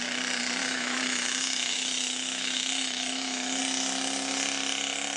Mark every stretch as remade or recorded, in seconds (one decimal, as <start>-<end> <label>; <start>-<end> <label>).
0.0-0.6 recorded; 0.6-3.6 remade; 3.6-5.2 recorded